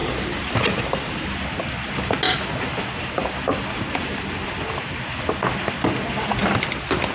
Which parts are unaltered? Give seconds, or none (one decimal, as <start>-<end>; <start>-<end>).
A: 1.4-6.4